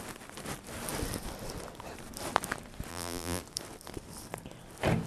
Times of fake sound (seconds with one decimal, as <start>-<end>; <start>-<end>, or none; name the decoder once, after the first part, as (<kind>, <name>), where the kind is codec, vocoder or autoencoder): 2.9-3.4 (vocoder, BigVGAN v2)